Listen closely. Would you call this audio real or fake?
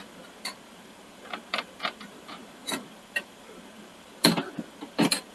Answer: fake